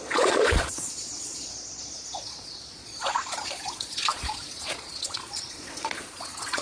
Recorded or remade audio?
remade